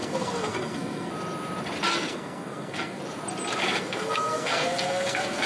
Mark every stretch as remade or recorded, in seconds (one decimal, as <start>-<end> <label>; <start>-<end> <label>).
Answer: 0.0-1.1 remade; 1.1-1.9 recorded; 1.9-3.0 remade; 3.0-3.6 recorded; 3.6-5.5 remade